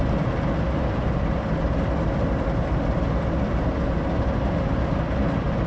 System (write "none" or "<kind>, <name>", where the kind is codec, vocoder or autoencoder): none